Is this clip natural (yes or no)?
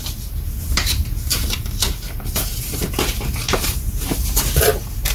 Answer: no